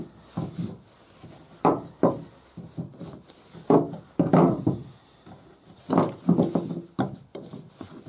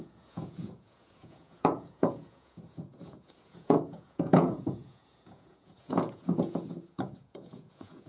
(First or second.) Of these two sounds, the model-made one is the second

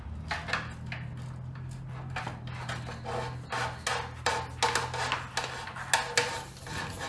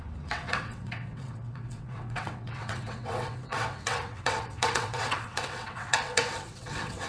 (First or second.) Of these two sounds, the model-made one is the second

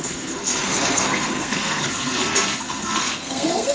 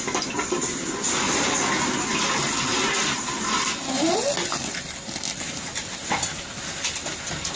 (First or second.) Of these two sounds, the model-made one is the first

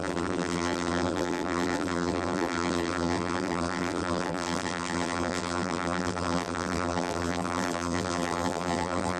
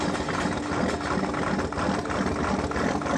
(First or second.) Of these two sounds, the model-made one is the first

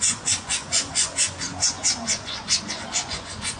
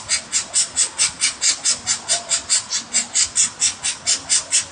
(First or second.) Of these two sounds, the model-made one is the first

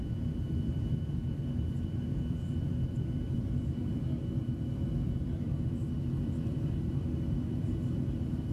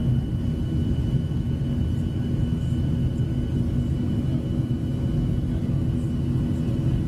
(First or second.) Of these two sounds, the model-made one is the first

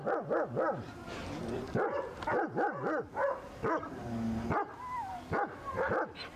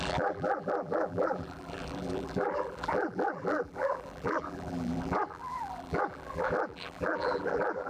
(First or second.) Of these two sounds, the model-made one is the second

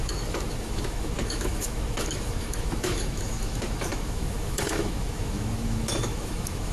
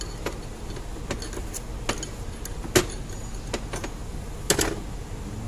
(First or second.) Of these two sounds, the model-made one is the first